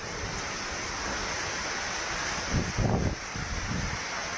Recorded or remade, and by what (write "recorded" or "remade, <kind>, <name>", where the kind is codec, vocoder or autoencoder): remade, vocoder, BigVGAN v2